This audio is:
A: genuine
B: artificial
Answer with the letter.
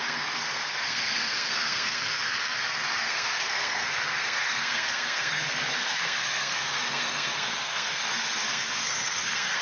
B